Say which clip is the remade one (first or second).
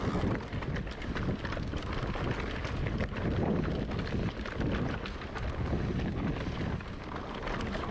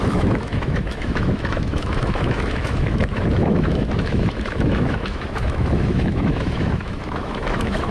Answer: second